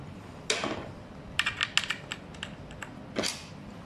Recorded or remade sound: recorded